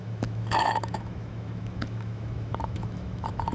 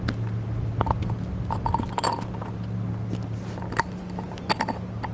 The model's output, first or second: first